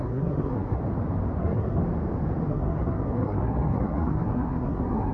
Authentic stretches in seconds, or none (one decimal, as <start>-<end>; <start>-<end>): 0.8-1.4; 1.8-2.5

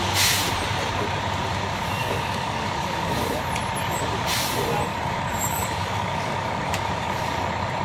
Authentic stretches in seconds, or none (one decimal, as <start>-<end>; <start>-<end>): 0.0-2.0; 3.4-4.9; 7.3-7.8

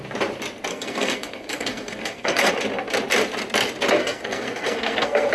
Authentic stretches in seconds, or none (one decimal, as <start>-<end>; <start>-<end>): 0.0-0.7; 2.5-4.0

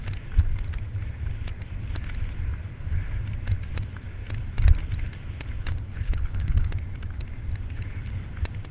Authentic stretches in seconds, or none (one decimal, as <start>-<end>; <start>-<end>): 0.0-5.9; 6.7-8.7

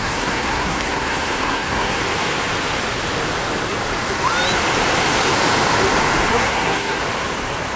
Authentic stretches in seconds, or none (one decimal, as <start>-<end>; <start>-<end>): 2.0-6.3; 7.0-7.8